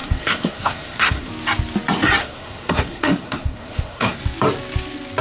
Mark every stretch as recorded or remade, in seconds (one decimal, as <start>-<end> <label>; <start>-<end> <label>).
0.0-1.3 remade; 1.3-2.2 recorded; 2.2-4.2 remade; 4.2-5.2 recorded